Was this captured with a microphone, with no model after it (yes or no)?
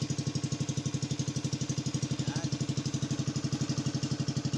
yes